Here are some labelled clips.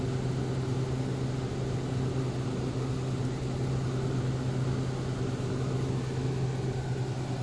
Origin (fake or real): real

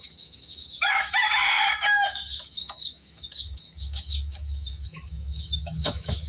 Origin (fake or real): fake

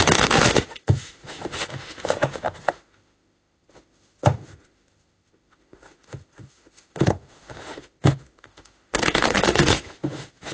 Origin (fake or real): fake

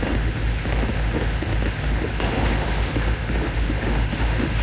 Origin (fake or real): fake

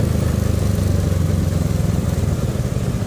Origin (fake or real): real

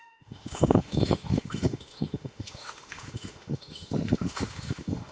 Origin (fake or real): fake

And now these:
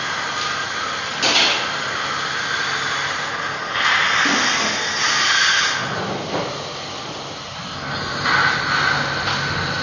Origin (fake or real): real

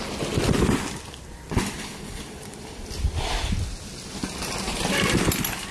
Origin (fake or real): real